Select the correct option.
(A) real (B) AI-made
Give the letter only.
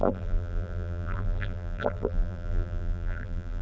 B